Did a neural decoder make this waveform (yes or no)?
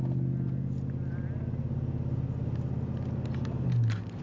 no